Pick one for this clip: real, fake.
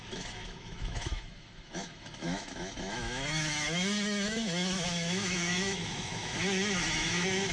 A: fake